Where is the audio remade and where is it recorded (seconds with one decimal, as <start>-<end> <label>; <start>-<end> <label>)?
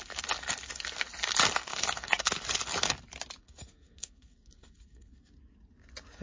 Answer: 0.0-1.6 recorded; 1.6-2.3 remade; 2.3-3.4 recorded; 3.4-5.3 remade; 5.3-6.2 recorded